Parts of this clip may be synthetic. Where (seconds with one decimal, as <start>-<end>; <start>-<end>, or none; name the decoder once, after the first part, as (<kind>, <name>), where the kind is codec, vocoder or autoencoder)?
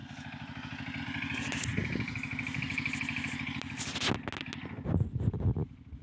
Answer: none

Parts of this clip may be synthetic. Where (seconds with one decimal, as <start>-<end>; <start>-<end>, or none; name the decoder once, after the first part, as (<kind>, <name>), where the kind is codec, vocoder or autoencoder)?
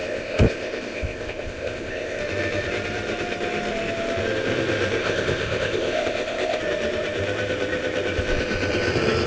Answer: 0.0-2.2 (codec, ZipCodec); 5.0-6.6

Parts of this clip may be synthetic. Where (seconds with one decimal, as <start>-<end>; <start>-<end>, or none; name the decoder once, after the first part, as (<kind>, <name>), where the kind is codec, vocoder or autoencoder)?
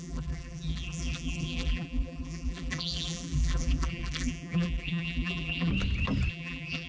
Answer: 0.0-5.7 (vocoder, BigVGAN v2); 6.3-6.9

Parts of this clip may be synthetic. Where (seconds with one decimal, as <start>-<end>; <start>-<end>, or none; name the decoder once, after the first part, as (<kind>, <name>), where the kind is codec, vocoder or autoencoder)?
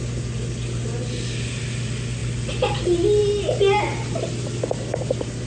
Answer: none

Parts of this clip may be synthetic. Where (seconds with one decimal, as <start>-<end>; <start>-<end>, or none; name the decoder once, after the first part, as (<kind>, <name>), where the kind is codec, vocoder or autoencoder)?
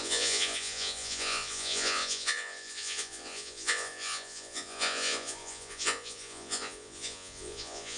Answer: 0.0-8.0 (vocoder, Vocos)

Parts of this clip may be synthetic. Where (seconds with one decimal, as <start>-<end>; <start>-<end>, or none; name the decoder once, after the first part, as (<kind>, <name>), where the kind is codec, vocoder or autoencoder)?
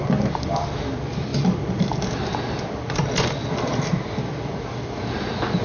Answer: none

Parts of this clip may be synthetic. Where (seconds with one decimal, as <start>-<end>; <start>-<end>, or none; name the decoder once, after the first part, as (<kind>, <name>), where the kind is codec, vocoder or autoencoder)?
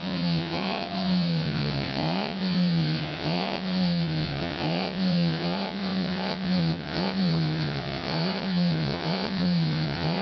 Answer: 0.0-10.2 (vocoder, WaveNeXt)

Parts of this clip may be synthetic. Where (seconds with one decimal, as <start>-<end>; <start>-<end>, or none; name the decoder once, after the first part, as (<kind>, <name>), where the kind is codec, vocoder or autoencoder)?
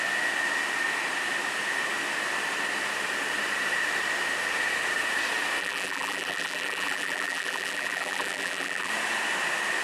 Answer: 5.6-8.9 (vocoder, BigVGAN v2)